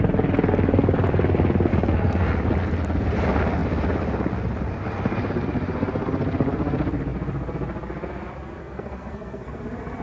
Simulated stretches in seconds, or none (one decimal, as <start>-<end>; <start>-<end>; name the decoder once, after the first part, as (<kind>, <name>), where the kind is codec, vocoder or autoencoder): 1.7-2.3 (codec, SNAC); 8.6-9.6